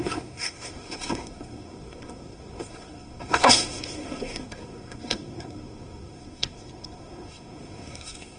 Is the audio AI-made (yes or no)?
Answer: yes